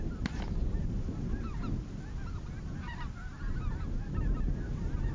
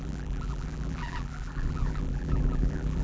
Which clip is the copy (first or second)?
second